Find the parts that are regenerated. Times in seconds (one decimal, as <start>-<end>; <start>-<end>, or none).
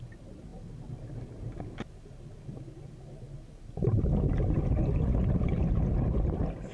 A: none